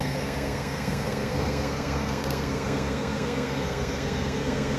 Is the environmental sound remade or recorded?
remade